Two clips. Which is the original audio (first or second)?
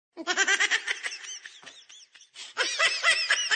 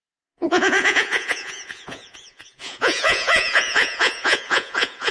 first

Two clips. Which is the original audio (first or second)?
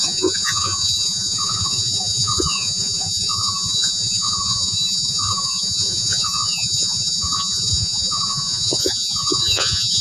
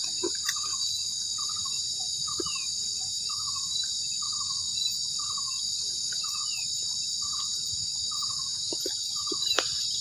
second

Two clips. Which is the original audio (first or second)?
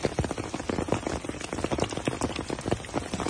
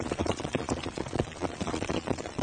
first